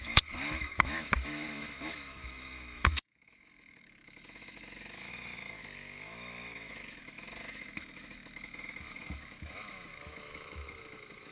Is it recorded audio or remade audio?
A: remade